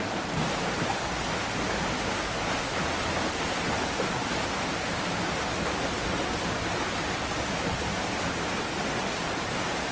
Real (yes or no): yes